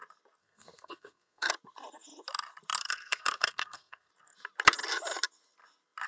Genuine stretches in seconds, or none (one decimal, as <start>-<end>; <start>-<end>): 0.0-0.4; 1.5-2.8; 4.1-6.1